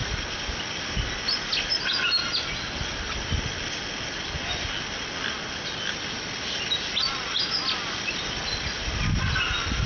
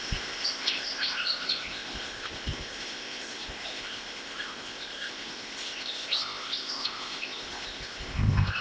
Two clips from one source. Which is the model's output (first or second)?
second